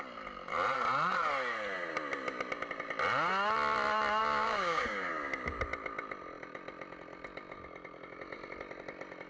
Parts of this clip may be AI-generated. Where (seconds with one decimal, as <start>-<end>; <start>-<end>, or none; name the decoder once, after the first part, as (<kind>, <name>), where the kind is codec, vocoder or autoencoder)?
4.2-5.1 (codec, DAC)